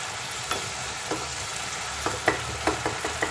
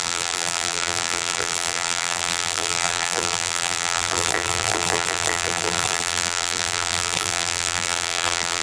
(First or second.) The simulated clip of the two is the second